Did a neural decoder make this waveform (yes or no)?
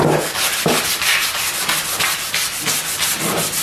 no